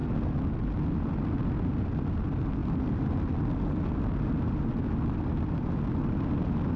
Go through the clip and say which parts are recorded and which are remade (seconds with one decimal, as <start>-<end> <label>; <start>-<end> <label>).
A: 0.0-6.8 recorded